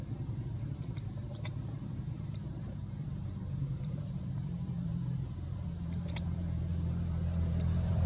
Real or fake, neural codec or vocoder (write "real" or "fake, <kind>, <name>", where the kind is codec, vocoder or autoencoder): fake, vocoder, BigVGAN v2